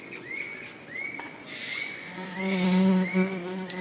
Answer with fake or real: fake